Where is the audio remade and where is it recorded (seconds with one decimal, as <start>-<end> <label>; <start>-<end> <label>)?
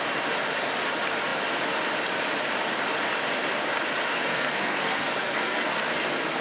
0.0-4.1 recorded; 4.1-6.4 remade